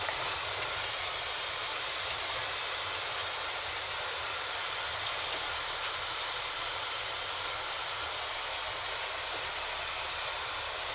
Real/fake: real